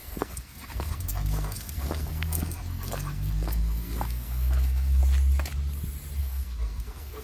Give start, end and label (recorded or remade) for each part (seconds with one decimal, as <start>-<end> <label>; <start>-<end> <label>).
0.0-5.0 remade; 5.0-6.2 recorded; 6.2-7.2 remade